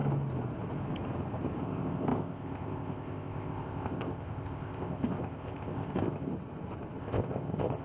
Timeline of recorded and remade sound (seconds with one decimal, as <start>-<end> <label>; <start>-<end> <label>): 0.0-1.6 recorded; 1.6-6.3 remade; 6.3-7.0 recorded; 7.0-7.8 remade